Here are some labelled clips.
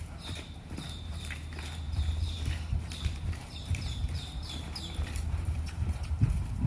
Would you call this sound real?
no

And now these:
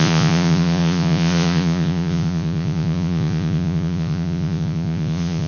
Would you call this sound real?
no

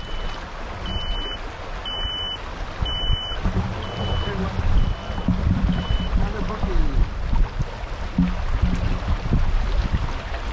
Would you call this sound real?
yes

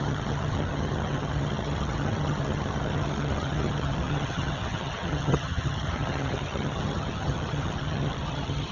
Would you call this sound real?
no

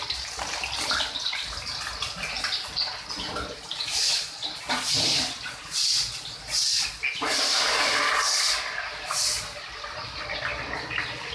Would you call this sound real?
yes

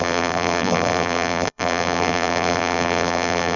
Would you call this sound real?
no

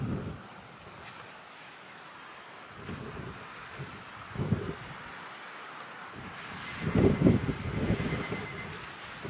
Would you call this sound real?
yes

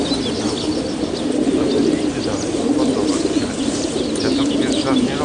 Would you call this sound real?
yes